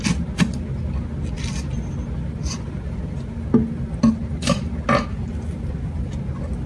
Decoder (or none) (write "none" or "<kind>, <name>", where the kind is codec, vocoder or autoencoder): none